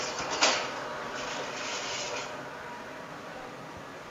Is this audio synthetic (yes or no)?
no